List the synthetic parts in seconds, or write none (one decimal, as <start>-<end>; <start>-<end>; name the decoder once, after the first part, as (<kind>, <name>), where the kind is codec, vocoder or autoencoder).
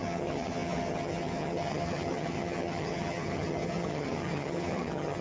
0.0-5.2 (vocoder, HiFi-GAN)